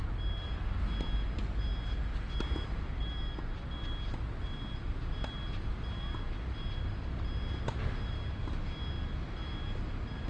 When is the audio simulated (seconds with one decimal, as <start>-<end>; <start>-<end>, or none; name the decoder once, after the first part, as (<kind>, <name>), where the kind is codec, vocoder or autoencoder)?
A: none